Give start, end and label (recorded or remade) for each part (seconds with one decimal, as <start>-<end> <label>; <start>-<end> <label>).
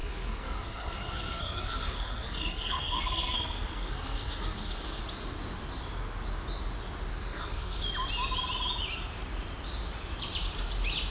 0.0-5.0 remade; 5.0-7.1 recorded; 7.1-7.8 remade; 7.8-11.1 recorded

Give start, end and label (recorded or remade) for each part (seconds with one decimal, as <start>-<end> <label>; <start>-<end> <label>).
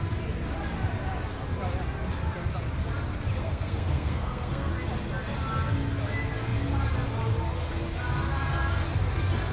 0.0-3.4 recorded; 3.4-4.7 remade; 4.7-9.5 recorded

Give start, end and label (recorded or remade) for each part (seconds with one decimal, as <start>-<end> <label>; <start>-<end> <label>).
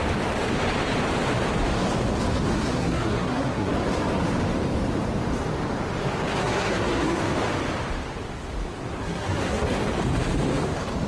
0.0-2.5 recorded; 2.5-3.7 remade; 3.7-6.4 recorded; 6.4-7.2 remade; 7.2-9.0 recorded; 9.0-9.8 remade; 9.8-11.1 recorded